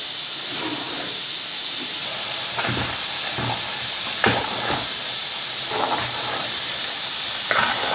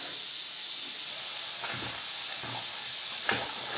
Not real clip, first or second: first